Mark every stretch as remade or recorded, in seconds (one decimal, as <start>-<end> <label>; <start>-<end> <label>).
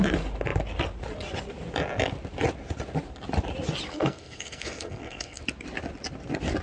0.0-3.9 recorded; 3.9-5.4 remade; 5.4-6.6 recorded